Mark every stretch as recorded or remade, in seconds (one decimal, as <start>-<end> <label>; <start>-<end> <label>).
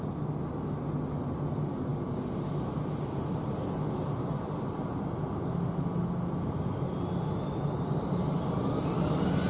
0.0-9.5 recorded